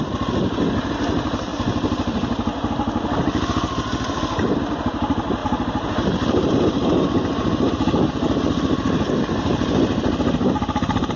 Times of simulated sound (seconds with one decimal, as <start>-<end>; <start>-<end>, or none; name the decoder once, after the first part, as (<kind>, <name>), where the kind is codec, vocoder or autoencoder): 5.4-6.5 (vocoder, BigVGAN v2)